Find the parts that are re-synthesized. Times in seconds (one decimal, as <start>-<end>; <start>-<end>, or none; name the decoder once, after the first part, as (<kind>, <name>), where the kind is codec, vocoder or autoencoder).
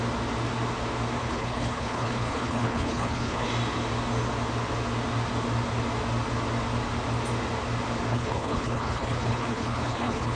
1.2-3.5 (codec, HILCodec); 8.1-10.4